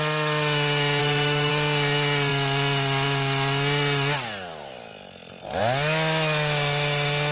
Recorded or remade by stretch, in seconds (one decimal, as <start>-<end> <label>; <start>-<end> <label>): 0.0-1.0 recorded; 1.0-1.5 remade; 1.5-7.3 recorded